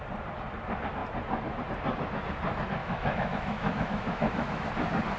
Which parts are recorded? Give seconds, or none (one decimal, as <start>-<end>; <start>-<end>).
0.0-2.8; 4.7-5.2